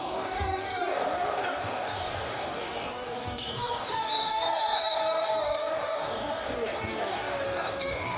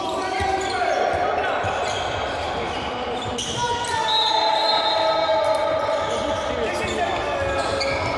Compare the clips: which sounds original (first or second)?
second